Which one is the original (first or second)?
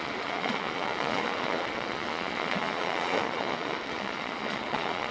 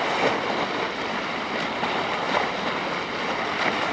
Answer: second